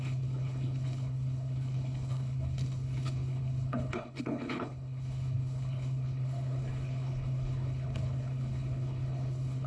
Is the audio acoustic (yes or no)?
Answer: no